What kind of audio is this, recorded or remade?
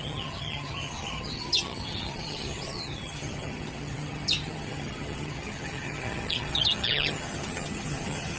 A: remade